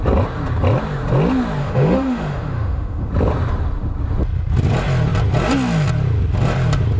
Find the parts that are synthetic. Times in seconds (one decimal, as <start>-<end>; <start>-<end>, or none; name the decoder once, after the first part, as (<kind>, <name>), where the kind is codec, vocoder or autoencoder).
1.6-3.1 (autoencoder, DAC-VAE)